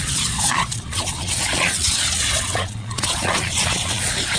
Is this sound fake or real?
fake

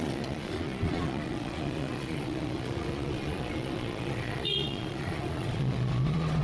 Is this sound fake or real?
fake